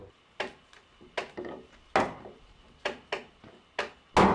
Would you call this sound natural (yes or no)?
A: yes